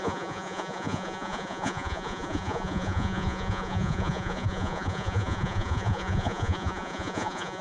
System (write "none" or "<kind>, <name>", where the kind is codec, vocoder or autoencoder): vocoder, Vocos